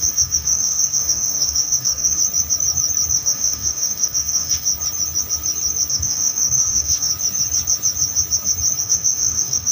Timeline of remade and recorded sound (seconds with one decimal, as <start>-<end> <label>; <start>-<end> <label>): 0.0-2.2 remade; 2.2-3.1 recorded; 3.1-4.7 remade; 4.7-5.9 recorded; 5.9-7.1 remade; 7.1-8.8 recorded; 8.8-9.7 remade